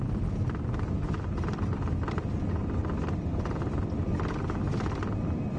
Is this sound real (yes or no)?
yes